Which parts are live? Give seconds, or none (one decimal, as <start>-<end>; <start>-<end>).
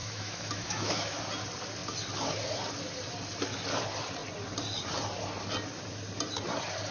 1.2-6.9